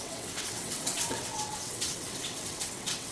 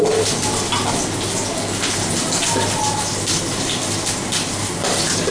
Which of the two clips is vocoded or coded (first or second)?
first